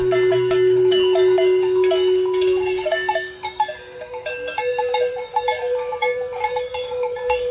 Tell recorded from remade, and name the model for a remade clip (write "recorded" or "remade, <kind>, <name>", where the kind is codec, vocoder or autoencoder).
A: remade, codec, DAC